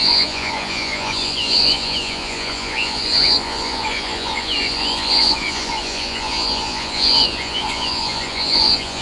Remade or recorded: remade